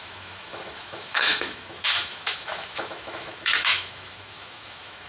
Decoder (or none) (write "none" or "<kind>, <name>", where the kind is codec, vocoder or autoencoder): autoencoder, DAC-VAE